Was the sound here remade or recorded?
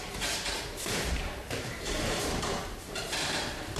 remade